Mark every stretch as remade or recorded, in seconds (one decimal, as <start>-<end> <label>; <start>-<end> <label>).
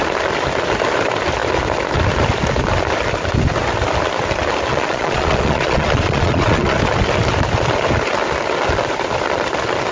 0.0-4.7 recorded; 4.7-6.8 remade; 6.8-9.9 recorded